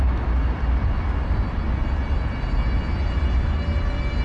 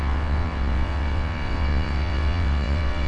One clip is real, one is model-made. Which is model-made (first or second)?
second